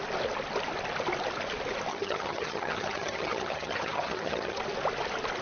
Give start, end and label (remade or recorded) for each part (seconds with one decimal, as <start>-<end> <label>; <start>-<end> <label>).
0.0-1.9 recorded; 1.9-4.6 remade; 4.6-5.4 recorded